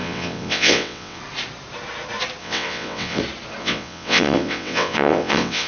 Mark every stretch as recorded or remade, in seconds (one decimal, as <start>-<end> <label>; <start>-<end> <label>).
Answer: 0.0-1.2 remade; 1.2-2.4 recorded; 2.4-3.2 remade; 3.2-3.6 recorded; 3.6-5.7 remade